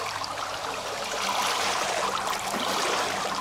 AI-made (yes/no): no